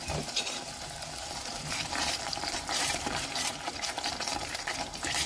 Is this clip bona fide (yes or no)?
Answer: no